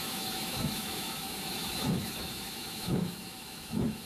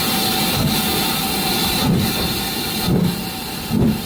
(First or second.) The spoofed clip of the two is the first